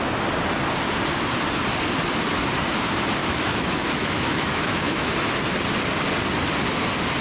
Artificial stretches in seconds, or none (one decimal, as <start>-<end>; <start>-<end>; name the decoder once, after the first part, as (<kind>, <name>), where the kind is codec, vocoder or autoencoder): 3.2-5.1 (autoencoder, DAC-VAE)